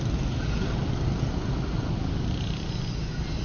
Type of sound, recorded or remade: recorded